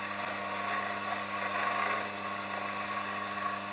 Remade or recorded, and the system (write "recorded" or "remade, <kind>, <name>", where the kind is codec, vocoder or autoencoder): recorded